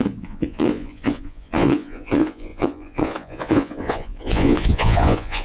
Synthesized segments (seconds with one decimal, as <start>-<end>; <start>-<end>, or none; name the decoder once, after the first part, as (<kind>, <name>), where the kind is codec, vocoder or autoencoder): 0.0-5.4 (vocoder, Vocos)